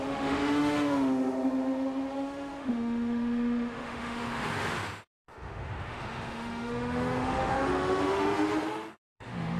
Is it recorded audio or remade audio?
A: remade